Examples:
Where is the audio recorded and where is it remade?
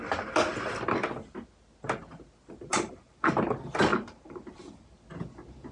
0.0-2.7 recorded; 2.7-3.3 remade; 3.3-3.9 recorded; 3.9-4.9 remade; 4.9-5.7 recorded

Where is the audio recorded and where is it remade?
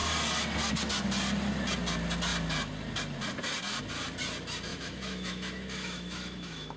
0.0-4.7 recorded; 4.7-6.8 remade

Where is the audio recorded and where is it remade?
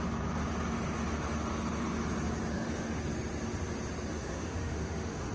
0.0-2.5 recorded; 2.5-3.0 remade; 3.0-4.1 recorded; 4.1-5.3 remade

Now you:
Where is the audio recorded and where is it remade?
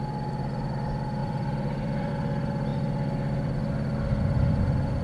0.0-1.2 recorded; 1.2-2.1 remade; 2.1-5.0 recorded